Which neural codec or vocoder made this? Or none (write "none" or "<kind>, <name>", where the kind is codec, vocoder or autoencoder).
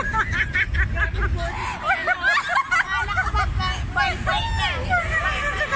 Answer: none